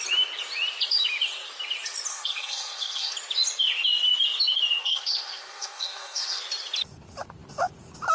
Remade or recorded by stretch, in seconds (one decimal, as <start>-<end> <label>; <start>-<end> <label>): 0.0-2.1 recorded; 2.1-3.1 remade; 3.1-4.8 recorded; 4.8-6.4 remade; 6.4-8.1 recorded